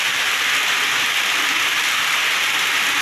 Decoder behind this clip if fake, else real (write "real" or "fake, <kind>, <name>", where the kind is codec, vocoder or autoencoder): real